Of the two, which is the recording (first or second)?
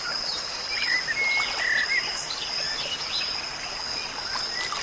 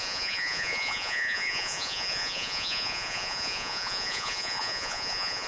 first